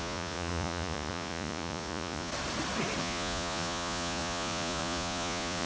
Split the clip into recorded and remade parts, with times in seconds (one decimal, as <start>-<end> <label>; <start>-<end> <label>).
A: 0.0-2.3 remade; 2.3-3.0 recorded; 3.0-5.7 remade